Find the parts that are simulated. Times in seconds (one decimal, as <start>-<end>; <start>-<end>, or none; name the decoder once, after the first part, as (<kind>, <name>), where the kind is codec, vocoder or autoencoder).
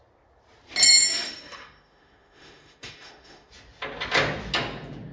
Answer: 1.1-3.5 (autoencoder, DAC-VAE)